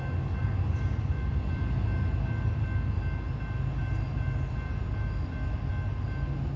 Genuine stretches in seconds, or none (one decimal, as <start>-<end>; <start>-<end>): 0.0-0.4; 1.7-3.8; 5.7-6.6